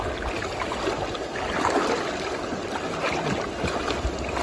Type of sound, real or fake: real